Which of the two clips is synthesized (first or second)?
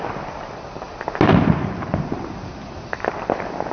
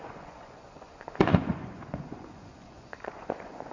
second